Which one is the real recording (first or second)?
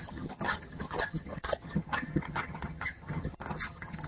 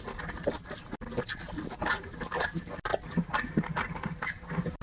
second